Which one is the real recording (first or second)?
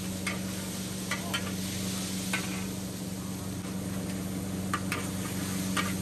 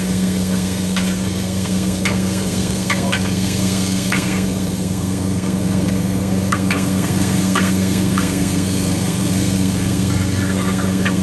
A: first